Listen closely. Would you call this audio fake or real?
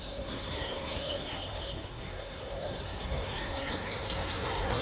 fake